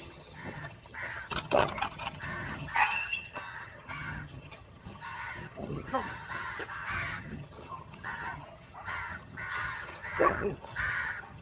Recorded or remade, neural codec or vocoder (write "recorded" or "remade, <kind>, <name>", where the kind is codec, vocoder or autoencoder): remade, vocoder, HiFi-GAN